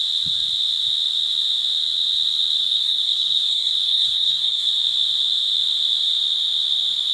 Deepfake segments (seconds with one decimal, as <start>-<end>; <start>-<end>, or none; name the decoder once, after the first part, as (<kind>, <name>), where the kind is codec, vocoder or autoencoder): 2.6-4.7 (codec, SNAC)